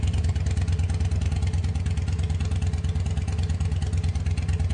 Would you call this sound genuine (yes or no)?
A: yes